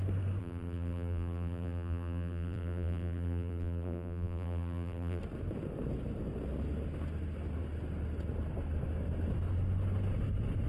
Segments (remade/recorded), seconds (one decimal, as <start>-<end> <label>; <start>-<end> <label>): 0.0-0.4 recorded; 0.4-5.2 remade; 5.2-10.7 recorded